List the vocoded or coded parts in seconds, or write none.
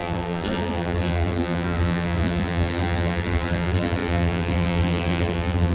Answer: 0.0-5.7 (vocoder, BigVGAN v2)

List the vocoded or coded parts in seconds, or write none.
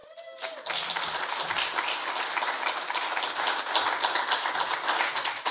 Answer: none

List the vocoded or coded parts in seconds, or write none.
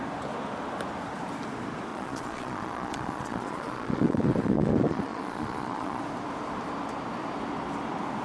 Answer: 1.9-6.0 (vocoder, Vocos)